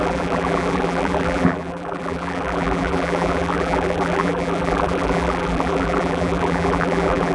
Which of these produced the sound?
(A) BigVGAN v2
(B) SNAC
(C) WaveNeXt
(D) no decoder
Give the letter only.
A